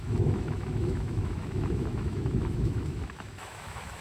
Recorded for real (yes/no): no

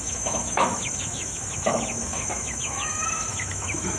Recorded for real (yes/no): no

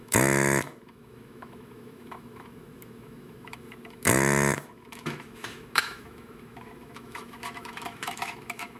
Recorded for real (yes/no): no